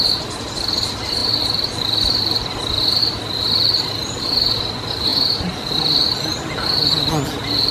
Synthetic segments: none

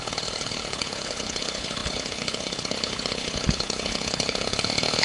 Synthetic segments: 0.0-5.0 (codec, HILCodec)